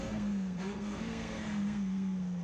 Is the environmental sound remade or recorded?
remade